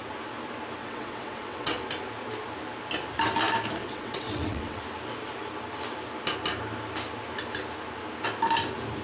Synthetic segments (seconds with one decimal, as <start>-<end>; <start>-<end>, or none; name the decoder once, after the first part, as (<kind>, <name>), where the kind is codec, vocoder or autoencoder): 0.8-1.8 (vocoder, WaveNeXt); 3.8-4.8